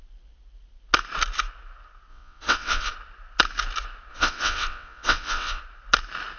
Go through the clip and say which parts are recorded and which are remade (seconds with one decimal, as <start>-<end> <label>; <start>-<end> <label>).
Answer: 0.0-2.1 recorded; 2.1-2.9 remade; 2.9-4.1 recorded; 4.1-5.6 remade; 5.6-6.4 recorded